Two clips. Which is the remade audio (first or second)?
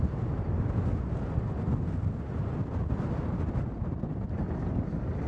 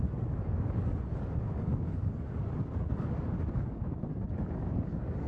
second